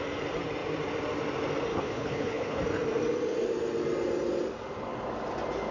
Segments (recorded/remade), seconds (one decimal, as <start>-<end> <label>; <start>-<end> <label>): 0.0-1.7 recorded; 1.7-2.6 remade; 2.6-5.7 recorded